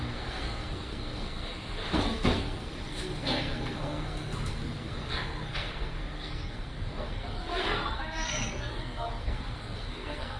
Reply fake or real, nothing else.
fake